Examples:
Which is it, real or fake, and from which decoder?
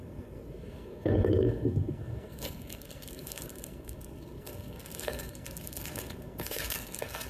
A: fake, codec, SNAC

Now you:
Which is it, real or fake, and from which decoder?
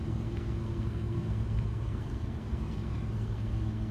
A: fake, codec, SNAC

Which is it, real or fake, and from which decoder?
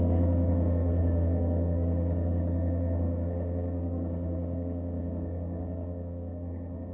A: fake, codec, SNAC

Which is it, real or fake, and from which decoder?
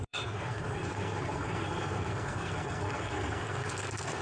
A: fake, codec, SNAC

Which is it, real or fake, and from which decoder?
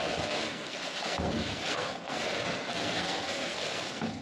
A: fake, codec, SNAC